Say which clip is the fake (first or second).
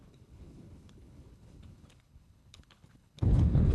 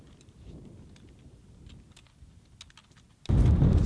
first